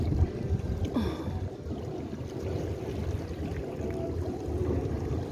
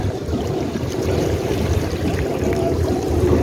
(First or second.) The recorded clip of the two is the first